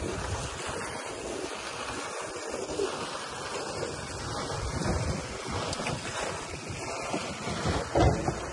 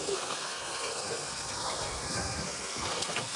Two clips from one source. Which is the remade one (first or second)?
second